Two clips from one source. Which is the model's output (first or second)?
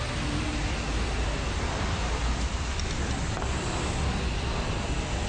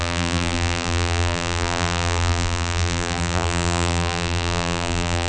second